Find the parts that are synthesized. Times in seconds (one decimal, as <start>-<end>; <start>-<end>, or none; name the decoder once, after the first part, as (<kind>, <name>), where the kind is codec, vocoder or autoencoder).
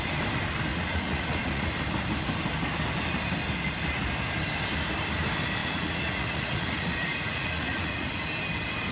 0.7-1.8 (vocoder, Vocos); 5.6-8.2